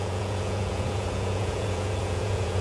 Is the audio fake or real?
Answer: fake